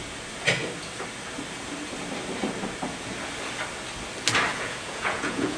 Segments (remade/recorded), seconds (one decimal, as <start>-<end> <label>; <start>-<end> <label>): 0.0-4.5 recorded; 4.5-5.6 remade